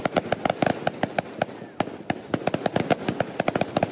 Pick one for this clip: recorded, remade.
recorded